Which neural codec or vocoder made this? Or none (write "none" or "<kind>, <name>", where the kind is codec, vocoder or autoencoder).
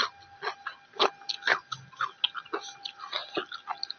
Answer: none